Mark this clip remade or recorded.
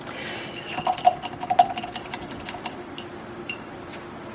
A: remade